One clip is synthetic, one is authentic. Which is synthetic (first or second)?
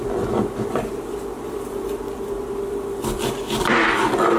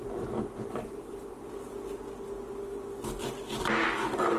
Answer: first